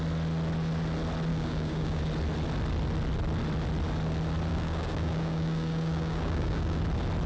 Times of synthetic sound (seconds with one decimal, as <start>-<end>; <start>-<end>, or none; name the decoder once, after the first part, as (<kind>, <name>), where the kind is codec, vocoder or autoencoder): 1.3-2.0 (codec, DAC); 4.5-6.8